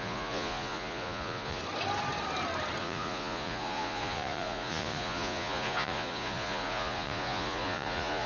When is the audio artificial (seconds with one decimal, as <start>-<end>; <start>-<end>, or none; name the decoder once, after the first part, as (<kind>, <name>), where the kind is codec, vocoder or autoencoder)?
0.0-1.6 (vocoder, Vocos); 2.8-8.3